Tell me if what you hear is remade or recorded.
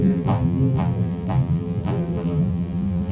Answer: remade